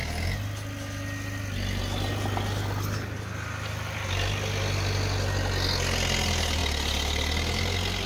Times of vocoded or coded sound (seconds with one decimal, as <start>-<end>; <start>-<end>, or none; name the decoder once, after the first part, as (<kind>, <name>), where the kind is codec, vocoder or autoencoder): none